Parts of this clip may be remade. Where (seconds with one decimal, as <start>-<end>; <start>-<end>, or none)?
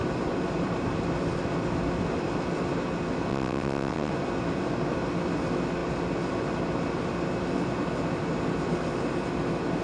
3.3-4.1